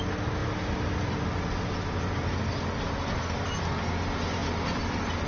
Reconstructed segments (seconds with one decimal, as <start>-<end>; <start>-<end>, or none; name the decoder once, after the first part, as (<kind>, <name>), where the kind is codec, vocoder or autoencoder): none